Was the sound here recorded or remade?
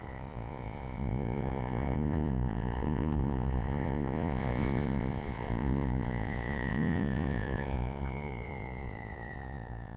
remade